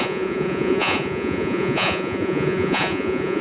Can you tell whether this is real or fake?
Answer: fake